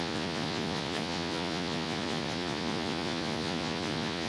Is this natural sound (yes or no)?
no